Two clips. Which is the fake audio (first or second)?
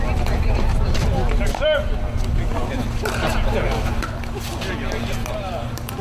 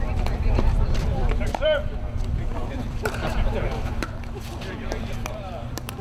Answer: second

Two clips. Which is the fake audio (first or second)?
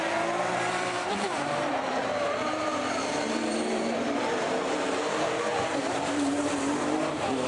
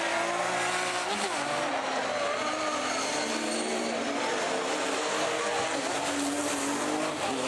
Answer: first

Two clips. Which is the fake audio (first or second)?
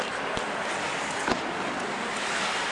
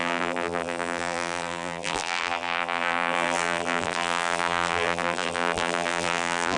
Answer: second